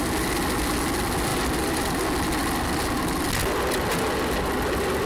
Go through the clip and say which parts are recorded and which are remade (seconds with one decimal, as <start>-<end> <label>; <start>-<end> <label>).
0.0-5.1 recorded